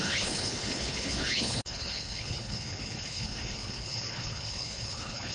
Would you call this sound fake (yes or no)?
yes